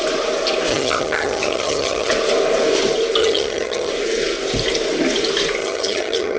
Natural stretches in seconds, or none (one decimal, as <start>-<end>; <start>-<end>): 0.0-0.7; 2.1-3.2; 3.9-5.6